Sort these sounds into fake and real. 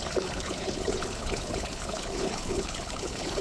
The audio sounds fake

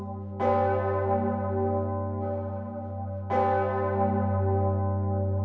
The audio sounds real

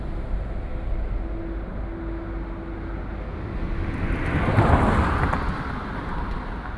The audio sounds real